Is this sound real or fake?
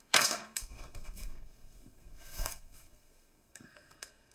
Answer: fake